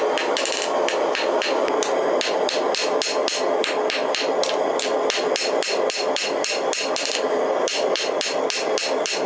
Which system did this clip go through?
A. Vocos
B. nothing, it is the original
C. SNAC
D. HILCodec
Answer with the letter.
B